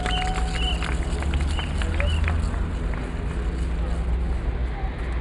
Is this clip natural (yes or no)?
yes